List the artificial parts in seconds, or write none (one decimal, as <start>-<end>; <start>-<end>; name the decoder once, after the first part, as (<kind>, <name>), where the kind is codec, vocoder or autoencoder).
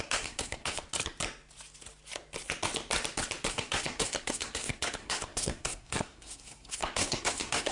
0.0-0.8 (codec, SNAC); 3.5-7.7